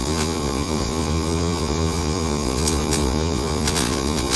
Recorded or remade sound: remade